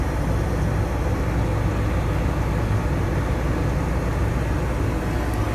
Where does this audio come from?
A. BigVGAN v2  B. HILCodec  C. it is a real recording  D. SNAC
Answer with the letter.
C